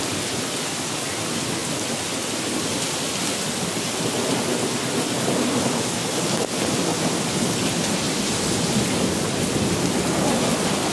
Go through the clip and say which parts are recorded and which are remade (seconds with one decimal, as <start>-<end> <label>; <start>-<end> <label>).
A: 0.0-10.9 recorded